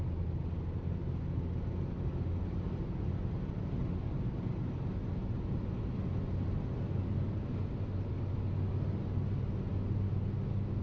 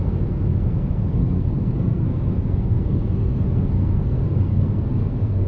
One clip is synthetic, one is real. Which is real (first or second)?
first